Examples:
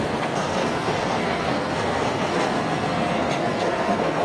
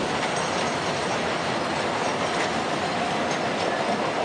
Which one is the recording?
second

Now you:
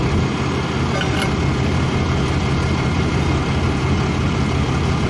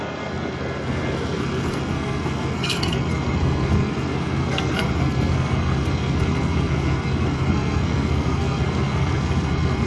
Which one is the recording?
first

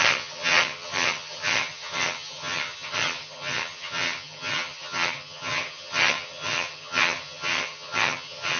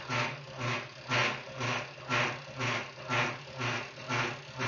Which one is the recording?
second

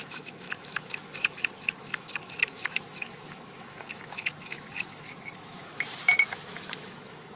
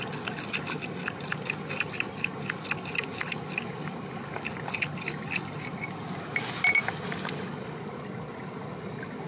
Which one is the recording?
second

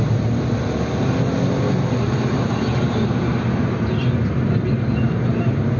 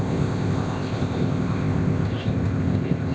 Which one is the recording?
first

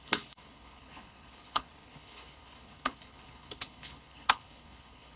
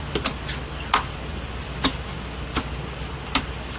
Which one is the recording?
second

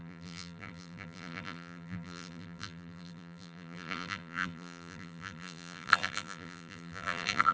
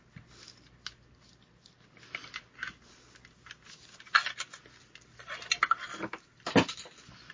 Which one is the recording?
second